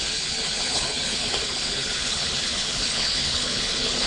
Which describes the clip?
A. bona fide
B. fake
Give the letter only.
B